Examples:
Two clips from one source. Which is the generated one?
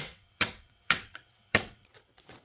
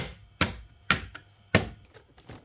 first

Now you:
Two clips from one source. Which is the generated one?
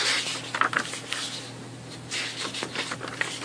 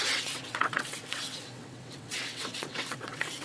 second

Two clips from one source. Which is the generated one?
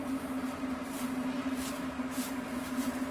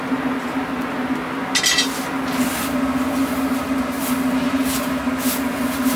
first